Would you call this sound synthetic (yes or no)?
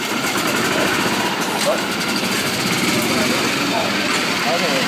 no